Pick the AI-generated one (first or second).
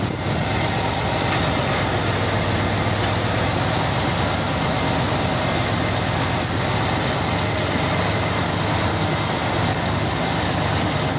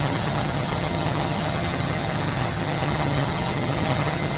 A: second